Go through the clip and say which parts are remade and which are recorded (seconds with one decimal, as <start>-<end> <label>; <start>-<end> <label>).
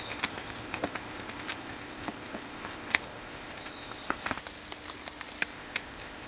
0.0-4.4 remade; 4.4-5.5 recorded; 5.5-6.3 remade